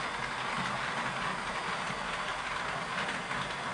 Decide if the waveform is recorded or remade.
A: recorded